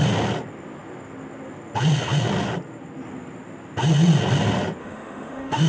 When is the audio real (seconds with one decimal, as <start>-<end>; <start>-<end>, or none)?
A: 0.0-4.8